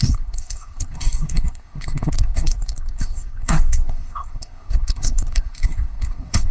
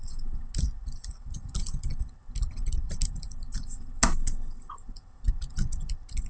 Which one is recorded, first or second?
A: second